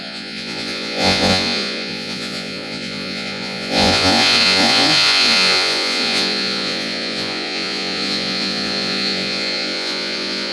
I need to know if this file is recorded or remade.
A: remade